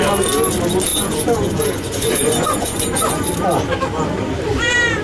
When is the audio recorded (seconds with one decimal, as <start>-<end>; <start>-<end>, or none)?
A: 0.0-0.9; 3.3-5.0

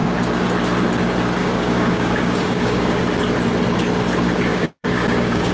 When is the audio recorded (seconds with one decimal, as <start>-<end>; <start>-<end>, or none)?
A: 0.0-1.4; 3.0-4.5

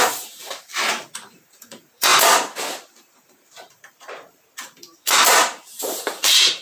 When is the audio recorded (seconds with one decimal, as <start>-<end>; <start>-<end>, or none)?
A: 2.1-3.0

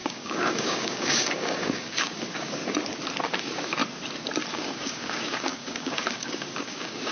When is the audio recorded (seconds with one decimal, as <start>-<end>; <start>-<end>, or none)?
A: 2.6-3.4; 3.8-4.5

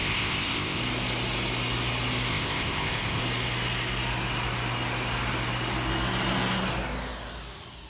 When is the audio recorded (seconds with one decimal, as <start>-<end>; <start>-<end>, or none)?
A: 0.8-2.3; 3.2-7.9

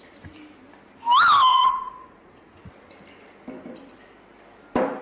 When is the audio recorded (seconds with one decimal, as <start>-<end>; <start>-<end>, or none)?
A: 0.0-1.5; 2.7-5.0

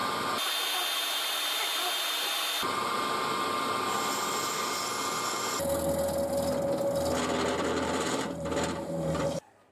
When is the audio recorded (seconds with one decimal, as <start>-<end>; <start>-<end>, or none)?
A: 0.0-1.0; 2.9-7.6